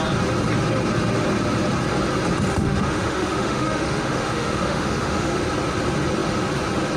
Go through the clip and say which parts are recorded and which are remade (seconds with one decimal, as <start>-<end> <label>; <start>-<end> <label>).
0.0-2.5 recorded; 2.5-5.4 remade; 5.4-7.0 recorded